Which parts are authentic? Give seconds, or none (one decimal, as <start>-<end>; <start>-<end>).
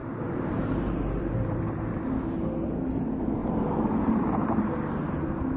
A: 2.0-3.4; 4.5-5.6